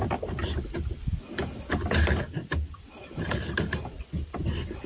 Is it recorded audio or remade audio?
recorded